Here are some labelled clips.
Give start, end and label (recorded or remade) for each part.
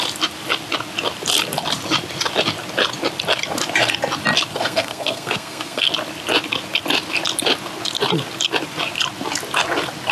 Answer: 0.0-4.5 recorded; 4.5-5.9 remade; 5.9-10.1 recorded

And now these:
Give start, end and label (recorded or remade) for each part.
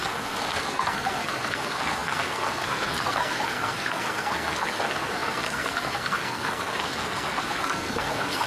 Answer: 0.0-8.5 remade